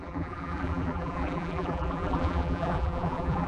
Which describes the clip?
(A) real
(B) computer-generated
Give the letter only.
B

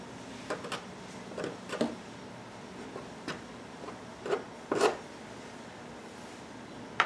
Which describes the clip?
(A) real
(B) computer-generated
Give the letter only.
A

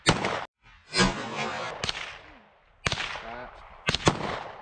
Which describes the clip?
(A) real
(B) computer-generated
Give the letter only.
A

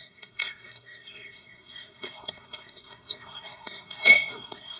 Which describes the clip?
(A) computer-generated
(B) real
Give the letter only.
A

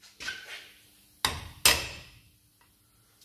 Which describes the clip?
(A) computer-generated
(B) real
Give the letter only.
B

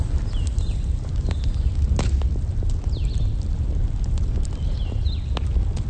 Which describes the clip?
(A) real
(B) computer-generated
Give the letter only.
A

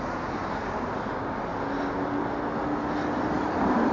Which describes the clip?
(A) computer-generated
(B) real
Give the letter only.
B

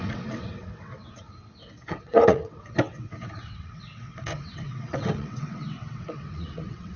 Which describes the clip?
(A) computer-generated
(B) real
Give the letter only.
A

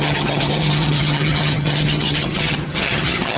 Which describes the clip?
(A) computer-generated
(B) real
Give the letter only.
A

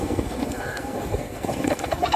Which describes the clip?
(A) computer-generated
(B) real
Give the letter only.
A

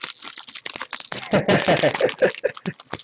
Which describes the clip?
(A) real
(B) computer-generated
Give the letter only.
A